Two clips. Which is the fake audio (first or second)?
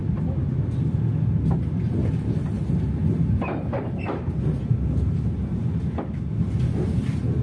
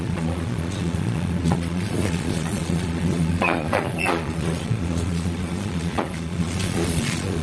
second